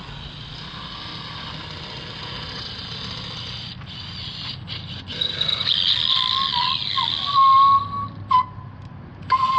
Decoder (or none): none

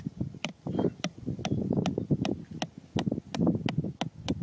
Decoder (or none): none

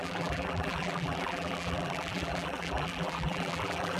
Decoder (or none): vocoder, BigVGAN v2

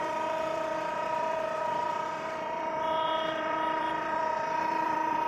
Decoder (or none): vocoder, BigVGAN v2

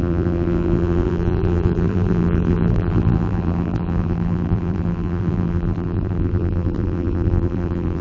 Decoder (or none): vocoder, BigVGAN v2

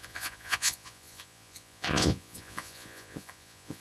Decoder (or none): vocoder, Vocos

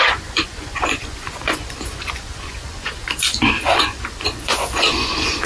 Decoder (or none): vocoder, Vocos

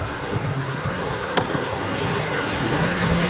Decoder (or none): codec, SNAC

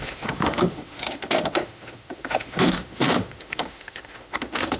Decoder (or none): autoencoder, DAC-VAE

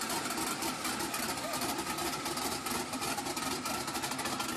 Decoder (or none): none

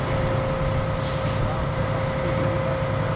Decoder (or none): none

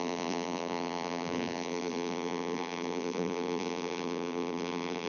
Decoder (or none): vocoder, BigVGAN v2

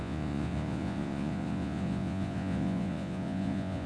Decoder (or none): vocoder, Vocos